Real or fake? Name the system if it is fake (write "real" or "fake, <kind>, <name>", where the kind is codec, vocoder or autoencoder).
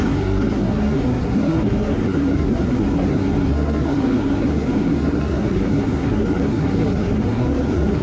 fake, codec, SNAC